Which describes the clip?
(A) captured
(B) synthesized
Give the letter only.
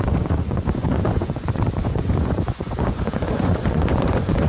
B